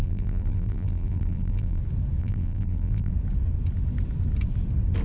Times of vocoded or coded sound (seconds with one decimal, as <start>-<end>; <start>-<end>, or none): 0.0-1.8; 2.2-3.1